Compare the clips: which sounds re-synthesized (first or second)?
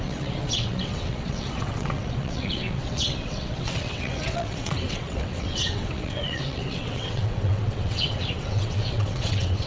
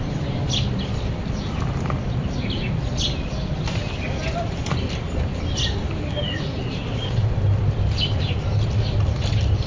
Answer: first